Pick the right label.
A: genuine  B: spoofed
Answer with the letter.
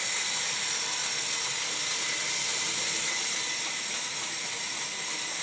A